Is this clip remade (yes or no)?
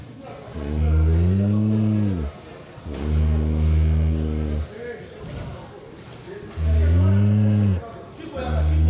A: no